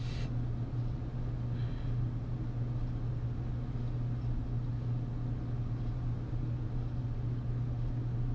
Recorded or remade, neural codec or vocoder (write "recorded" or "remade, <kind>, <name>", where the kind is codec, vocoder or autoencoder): recorded